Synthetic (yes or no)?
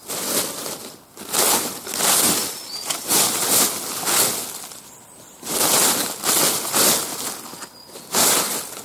no